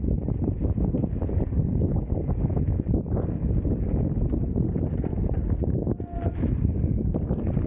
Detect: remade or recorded recorded